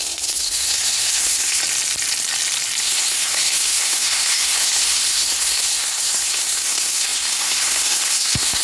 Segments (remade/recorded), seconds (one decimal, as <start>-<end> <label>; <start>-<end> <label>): 0.0-1.6 remade; 1.6-2.8 recorded; 2.8-8.6 remade